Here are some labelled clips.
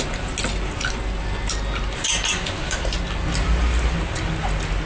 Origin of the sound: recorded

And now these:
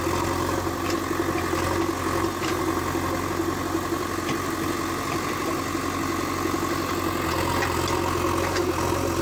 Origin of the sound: recorded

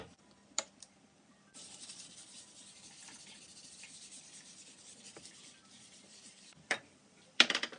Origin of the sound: remade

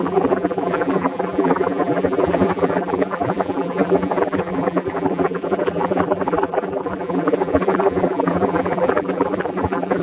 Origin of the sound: remade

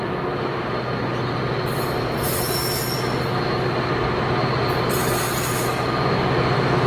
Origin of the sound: recorded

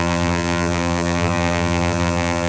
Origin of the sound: remade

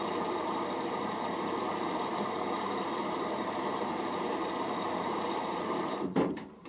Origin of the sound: remade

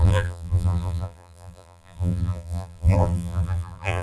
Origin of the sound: remade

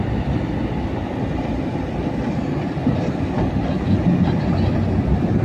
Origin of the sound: recorded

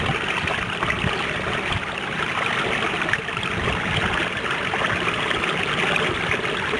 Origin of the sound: recorded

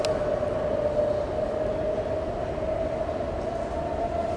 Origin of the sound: recorded